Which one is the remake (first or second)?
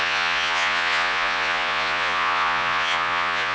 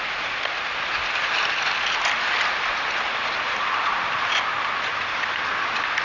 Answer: first